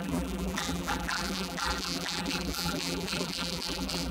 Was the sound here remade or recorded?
remade